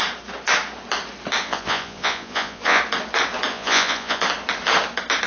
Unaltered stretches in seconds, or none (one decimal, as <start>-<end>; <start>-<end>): 0.0-1.4; 2.8-3.5; 4.2-5.3